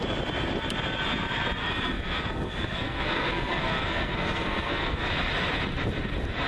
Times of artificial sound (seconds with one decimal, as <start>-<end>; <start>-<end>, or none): 1.6-5.1